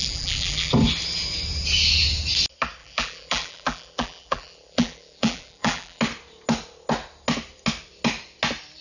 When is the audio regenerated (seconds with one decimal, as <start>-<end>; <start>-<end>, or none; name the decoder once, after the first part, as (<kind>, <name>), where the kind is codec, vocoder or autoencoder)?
0.0-0.7 (vocoder, BigVGAN v2); 2.8-6.0